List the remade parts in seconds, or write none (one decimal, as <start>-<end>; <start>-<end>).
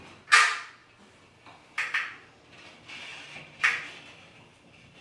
3.1-3.9